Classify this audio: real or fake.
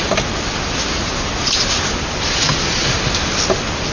real